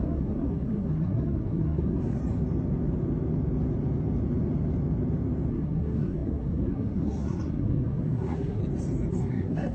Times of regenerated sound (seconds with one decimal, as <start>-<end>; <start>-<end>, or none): 0.0-2.2; 5.5-8.6; 9.1-9.7